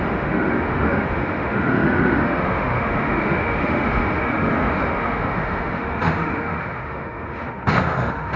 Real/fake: fake